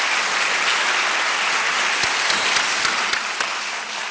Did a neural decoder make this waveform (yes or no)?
no